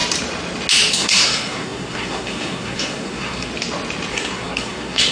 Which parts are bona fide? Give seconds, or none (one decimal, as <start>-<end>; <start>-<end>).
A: 0.0-0.9; 3.5-4.1